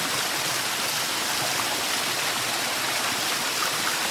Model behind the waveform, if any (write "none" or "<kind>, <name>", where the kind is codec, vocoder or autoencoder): none